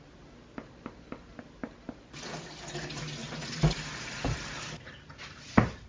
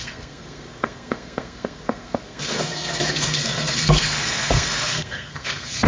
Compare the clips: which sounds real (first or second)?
first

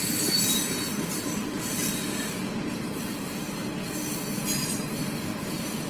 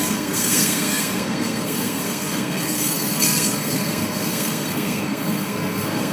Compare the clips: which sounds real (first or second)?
first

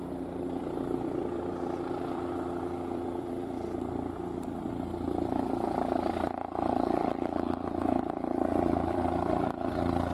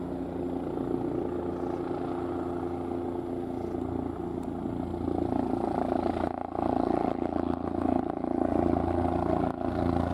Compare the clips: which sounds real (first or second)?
second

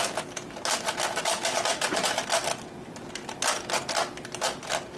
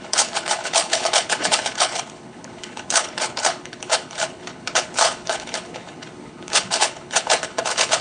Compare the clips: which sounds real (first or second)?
first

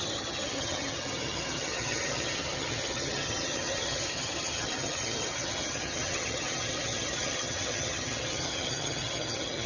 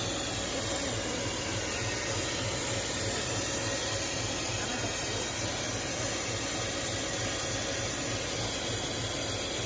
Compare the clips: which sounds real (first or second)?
second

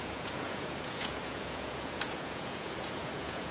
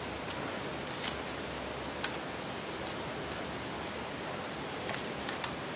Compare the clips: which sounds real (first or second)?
second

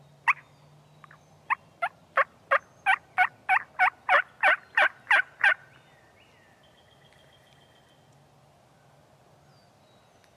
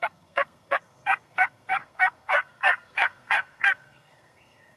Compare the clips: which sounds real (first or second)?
first